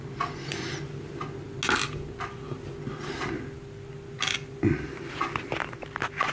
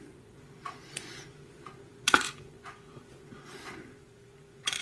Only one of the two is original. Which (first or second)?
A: first